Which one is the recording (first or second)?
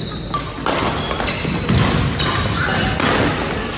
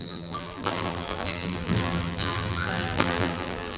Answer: first